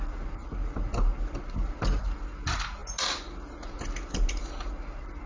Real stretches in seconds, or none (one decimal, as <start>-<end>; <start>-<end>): 0.0-5.3